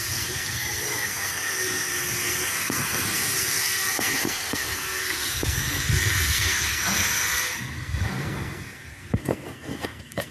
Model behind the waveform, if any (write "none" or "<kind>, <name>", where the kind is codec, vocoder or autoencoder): codec, SNAC